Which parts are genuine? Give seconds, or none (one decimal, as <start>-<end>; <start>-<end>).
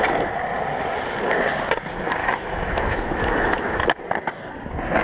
0.0-2.2; 4.0-5.0